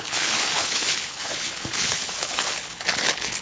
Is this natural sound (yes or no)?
no